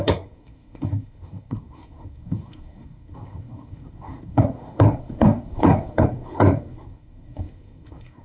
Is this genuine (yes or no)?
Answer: no